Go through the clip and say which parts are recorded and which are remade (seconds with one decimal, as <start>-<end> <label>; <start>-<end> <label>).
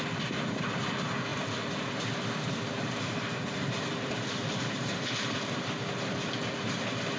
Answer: 0.0-1.3 recorded; 1.3-5.6 remade; 5.6-7.2 recorded